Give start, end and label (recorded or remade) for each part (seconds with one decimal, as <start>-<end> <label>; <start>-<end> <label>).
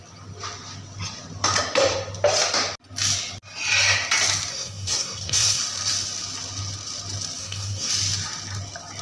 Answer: 0.0-4.5 recorded; 4.5-5.6 remade; 5.6-7.4 recorded; 7.4-7.9 remade; 7.9-9.0 recorded